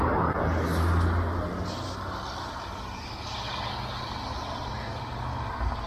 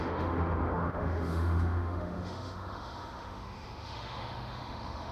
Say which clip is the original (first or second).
first